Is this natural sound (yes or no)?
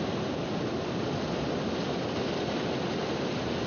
yes